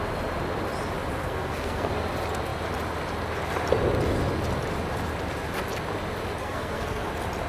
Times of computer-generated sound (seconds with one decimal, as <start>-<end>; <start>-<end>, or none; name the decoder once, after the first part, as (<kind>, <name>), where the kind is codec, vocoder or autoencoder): 1.2-1.9 (codec, SNAC); 6.4-7.1